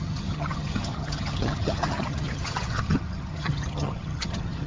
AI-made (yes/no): yes